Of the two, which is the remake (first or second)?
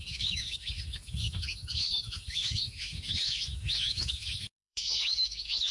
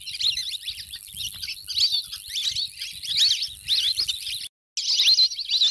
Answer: first